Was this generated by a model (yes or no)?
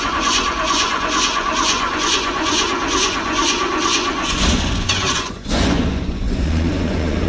yes